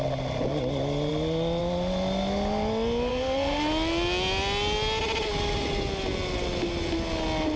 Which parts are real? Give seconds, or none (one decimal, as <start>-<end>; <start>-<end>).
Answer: 0.0-3.1; 3.6-7.6